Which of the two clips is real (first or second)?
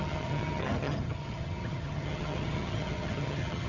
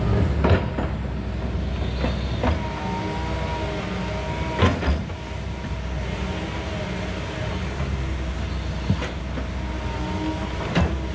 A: second